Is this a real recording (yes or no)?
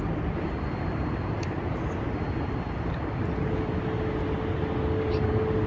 yes